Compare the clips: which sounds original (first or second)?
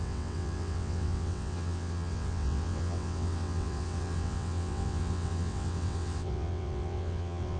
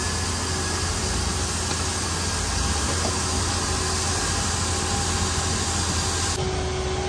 second